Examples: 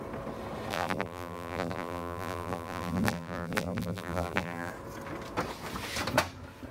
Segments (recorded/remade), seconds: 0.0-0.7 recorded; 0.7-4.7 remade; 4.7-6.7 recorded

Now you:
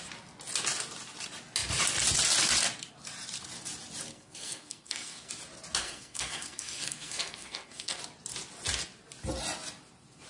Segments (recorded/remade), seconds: 0.0-4.1 recorded; 4.1-5.3 remade; 5.3-5.8 recorded; 5.8-8.0 remade; 8.0-10.3 recorded

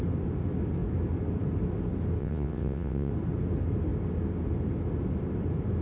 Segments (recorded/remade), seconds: 0.0-2.2 recorded; 2.2-3.1 remade; 3.1-5.8 recorded